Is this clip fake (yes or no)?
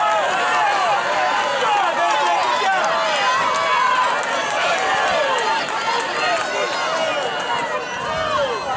no